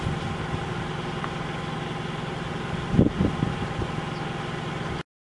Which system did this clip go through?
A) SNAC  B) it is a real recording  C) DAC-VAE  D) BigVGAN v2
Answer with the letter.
B